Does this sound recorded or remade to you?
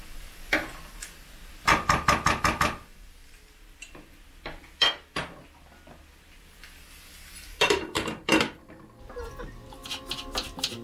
recorded